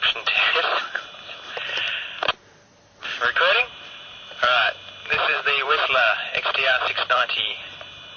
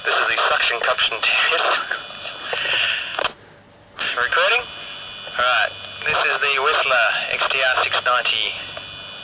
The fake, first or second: first